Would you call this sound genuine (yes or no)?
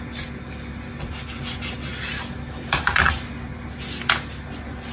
yes